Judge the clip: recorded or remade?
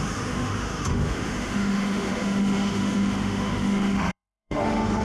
remade